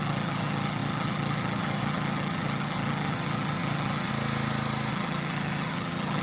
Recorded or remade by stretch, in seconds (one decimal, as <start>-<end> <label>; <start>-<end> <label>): 0.0-4.1 remade; 4.1-4.9 recorded; 4.9-6.2 remade